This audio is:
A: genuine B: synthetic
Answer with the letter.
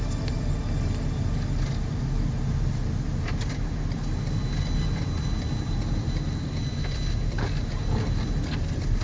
A